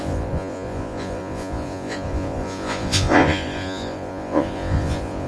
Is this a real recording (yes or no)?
no